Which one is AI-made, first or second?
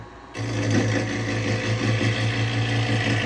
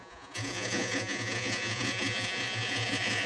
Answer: second